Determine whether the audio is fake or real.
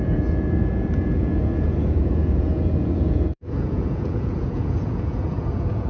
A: fake